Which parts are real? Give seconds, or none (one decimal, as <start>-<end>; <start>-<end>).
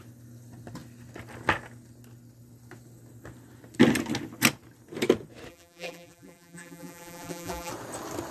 0.0-5.5; 7.7-8.3